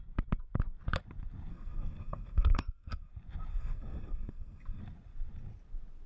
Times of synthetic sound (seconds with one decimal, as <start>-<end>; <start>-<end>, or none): 1.5-3.1; 3.5-4.8